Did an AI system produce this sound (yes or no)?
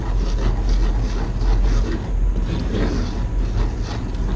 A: no